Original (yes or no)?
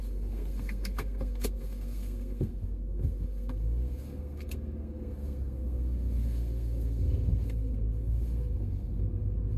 no